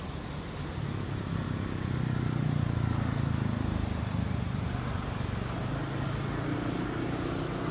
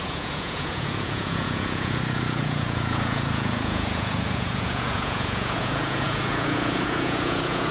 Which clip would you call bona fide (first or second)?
first